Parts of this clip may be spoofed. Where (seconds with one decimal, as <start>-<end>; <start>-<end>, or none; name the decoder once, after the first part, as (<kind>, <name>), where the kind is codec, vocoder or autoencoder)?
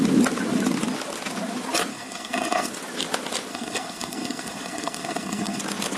1.9-2.7 (codec, SNAC); 3.5-5.6